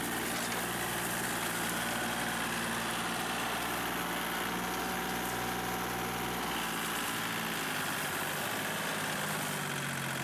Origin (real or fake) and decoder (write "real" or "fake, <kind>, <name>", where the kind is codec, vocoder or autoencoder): real